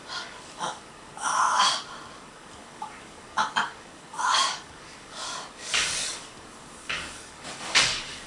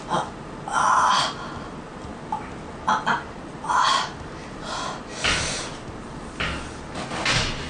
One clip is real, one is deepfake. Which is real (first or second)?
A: second